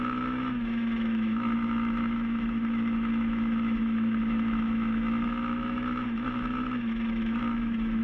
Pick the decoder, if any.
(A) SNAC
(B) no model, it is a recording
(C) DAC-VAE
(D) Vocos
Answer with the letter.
C